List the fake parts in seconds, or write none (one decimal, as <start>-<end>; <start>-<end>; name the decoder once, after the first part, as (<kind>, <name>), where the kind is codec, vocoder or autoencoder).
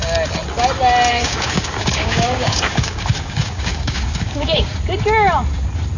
1.1-4.7 (codec, DAC)